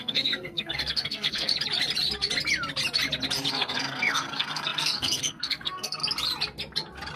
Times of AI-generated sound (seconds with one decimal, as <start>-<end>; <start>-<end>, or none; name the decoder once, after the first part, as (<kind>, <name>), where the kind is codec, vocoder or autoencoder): 0.0-1.5 (codec, SNAC); 3.5-6.0